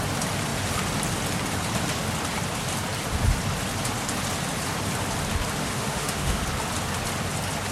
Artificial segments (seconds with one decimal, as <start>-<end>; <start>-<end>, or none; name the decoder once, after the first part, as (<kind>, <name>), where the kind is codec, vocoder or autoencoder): 5.6-6.4 (autoencoder, DAC-VAE)